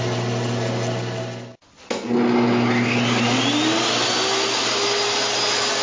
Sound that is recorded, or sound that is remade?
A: recorded